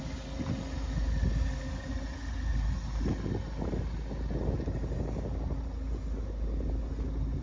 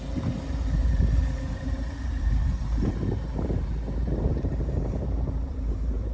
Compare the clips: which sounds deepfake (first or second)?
second